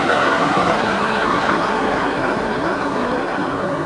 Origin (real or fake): fake